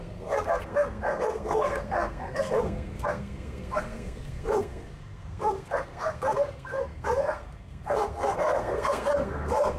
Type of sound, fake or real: fake